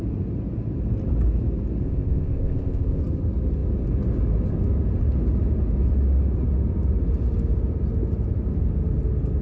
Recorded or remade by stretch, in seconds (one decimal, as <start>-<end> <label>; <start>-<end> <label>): 0.0-1.8 recorded; 1.8-3.0 remade; 3.0-9.4 recorded